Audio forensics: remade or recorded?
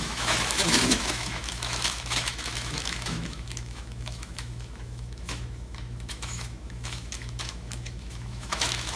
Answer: remade